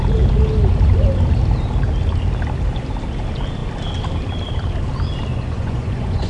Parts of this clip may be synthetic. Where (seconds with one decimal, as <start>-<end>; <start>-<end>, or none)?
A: 5.3-6.3